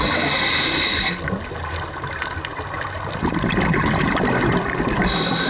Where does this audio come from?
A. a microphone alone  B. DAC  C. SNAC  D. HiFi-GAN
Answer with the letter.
A